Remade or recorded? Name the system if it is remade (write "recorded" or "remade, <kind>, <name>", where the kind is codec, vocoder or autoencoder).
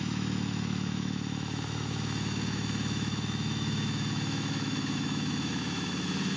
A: remade, autoencoder, DAC-VAE